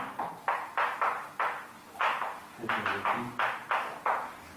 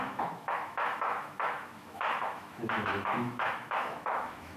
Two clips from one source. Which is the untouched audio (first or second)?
first